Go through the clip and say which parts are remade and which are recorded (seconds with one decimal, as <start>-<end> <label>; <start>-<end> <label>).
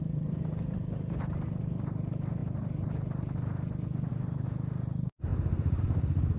0.0-2.4 remade; 2.4-4.1 recorded; 4.1-6.4 remade